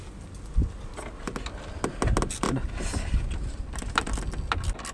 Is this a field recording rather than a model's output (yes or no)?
yes